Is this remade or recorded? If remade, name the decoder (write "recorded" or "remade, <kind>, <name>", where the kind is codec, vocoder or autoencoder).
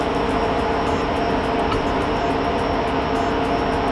recorded